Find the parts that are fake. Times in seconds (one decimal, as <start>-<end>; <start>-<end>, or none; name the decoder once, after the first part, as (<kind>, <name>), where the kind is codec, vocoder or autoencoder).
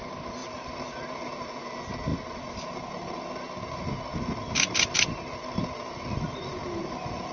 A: none